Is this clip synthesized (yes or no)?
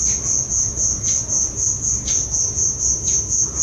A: no